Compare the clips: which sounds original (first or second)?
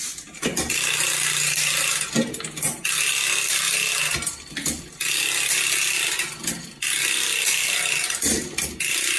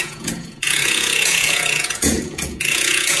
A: first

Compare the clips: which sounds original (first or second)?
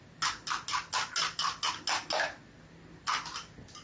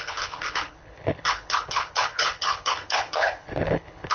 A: first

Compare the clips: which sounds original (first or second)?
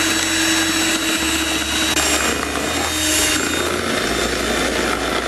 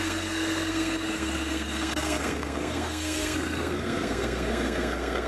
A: first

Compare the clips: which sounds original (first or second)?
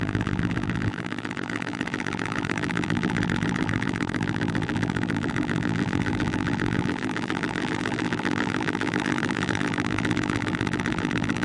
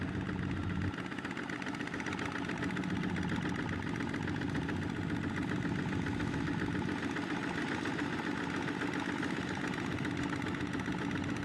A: second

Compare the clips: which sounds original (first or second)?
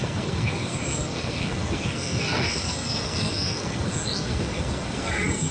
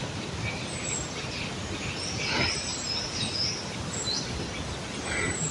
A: second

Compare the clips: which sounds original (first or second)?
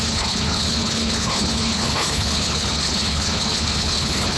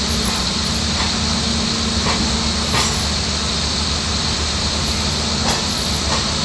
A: second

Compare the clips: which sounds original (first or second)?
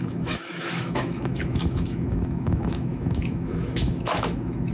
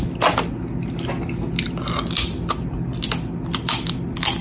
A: second